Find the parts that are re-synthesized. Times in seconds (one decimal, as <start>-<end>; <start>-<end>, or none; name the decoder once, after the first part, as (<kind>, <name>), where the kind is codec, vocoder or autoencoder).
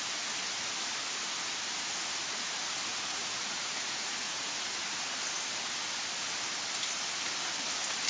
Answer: 2.9-4.7 (vocoder, Vocos)